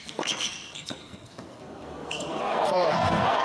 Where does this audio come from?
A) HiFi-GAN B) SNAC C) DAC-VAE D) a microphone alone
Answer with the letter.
B